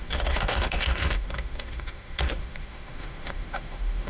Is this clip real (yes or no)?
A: no